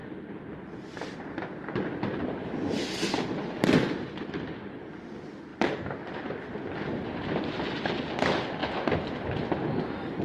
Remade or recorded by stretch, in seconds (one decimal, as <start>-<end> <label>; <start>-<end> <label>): 0.0-5.5 recorded; 5.5-7.9 remade; 7.9-10.2 recorded